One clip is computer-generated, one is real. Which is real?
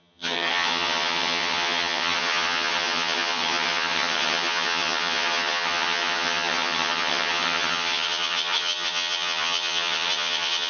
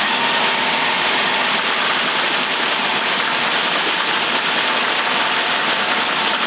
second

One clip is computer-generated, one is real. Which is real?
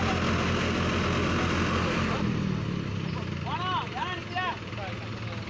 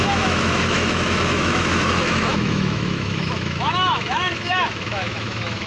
first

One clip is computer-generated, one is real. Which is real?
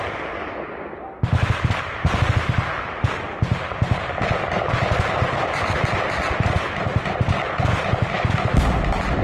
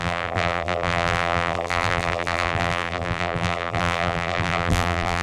first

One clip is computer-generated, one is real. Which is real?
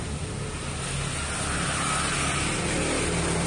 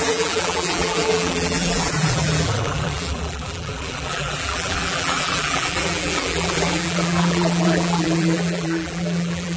first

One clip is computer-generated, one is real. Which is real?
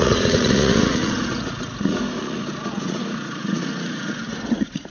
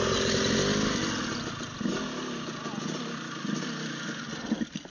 second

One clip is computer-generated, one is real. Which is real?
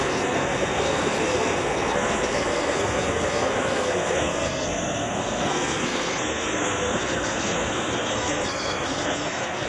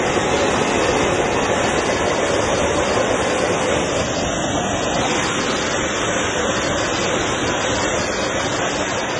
second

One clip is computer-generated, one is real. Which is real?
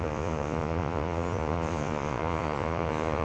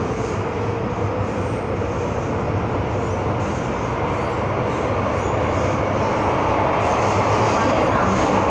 second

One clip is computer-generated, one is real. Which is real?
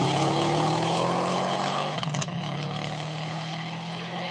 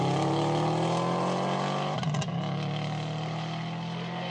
second